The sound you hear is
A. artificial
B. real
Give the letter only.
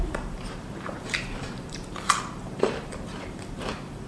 A